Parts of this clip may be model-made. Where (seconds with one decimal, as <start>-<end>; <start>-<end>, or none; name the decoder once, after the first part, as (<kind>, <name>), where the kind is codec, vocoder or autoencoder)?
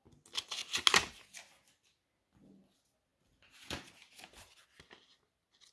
none